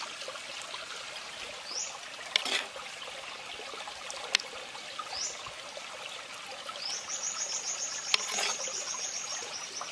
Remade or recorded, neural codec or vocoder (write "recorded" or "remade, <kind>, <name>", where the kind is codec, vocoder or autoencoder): recorded